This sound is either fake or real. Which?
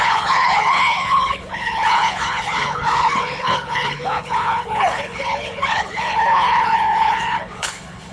fake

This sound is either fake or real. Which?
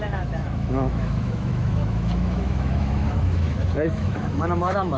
fake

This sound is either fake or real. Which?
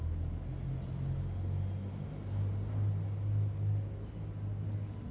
real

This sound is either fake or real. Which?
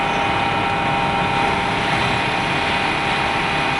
real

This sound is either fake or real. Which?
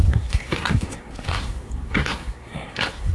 fake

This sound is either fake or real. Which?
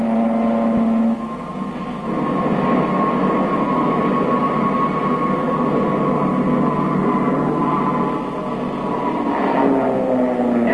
real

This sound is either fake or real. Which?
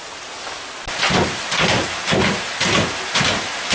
real